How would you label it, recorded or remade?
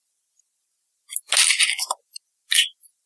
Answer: recorded